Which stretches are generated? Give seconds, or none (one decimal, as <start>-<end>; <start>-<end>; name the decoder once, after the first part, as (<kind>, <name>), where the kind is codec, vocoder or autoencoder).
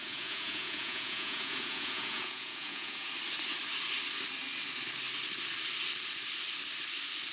0.0-3.1 (vocoder, Vocos)